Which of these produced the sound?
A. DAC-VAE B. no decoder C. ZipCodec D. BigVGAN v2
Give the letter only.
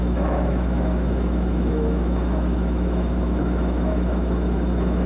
A